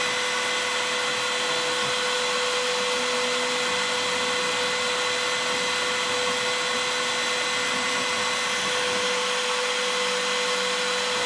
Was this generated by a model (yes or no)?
no